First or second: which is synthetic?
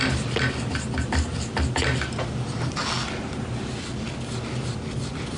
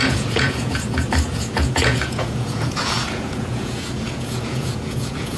second